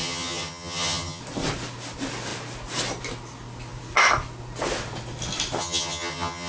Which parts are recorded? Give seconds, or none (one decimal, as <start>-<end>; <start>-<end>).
1.2-5.6